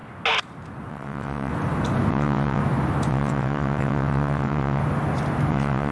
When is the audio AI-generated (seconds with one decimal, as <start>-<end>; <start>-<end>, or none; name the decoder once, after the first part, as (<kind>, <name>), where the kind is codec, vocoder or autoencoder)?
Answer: 0.9-1.5 (vocoder, WaveNeXt); 2.1-2.6; 3.1-4.8; 5.5-5.9